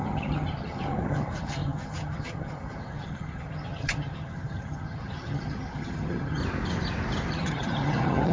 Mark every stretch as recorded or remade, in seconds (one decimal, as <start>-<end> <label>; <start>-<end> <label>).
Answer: 0.0-6.4 remade; 6.4-7.3 recorded; 7.3-8.3 remade